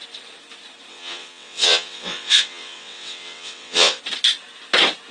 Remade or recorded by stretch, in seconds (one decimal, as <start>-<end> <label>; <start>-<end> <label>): 0.0-0.9 recorded; 0.9-4.0 remade; 4.0-5.1 recorded